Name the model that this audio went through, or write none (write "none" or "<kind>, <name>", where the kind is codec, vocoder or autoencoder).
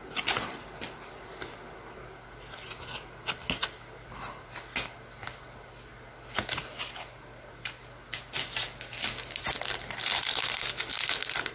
none